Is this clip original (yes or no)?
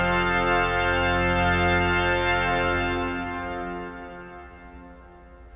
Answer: yes